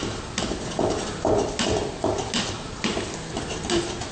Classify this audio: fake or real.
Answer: real